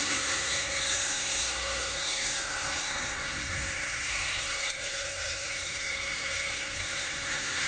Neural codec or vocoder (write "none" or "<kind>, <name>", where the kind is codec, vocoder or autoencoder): codec, SNAC